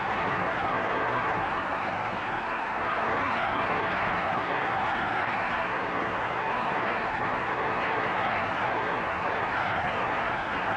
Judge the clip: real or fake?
fake